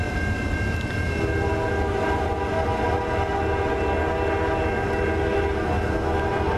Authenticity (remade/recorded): recorded